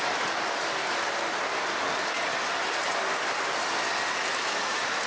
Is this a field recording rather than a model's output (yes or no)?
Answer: yes